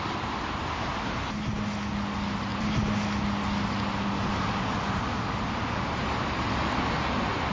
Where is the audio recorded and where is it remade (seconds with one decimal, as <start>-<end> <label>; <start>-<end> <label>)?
0.0-7.5 recorded